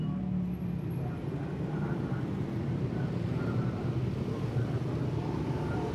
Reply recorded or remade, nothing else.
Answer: recorded